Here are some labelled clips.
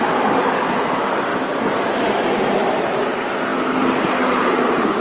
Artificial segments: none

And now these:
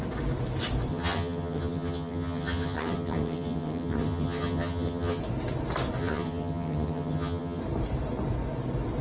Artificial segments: 0.9-5.2; 6.0-7.6

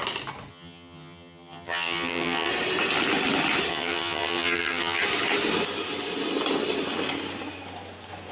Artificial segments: 0.5-2.5; 3.7-5.0

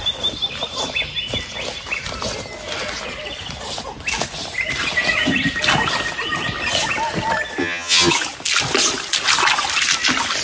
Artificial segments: 7.6-8.1

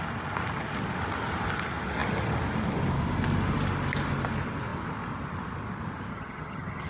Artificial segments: 6.1-6.9

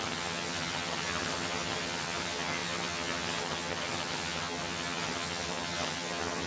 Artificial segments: 0.0-6.5